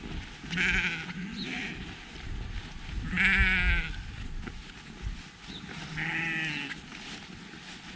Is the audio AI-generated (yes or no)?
no